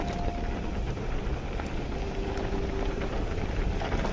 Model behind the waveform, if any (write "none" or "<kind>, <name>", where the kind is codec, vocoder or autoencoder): none